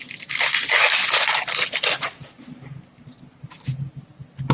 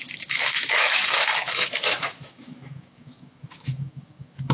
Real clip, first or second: first